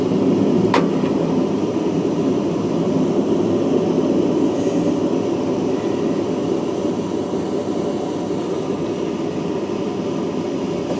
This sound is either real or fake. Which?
real